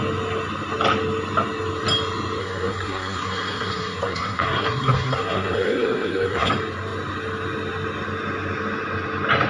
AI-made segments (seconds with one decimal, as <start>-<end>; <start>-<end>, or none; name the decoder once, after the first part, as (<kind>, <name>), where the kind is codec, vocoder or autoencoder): 2.4-6.5 (codec, SNAC)